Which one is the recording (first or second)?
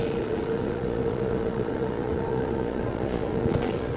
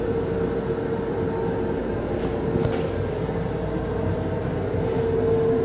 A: second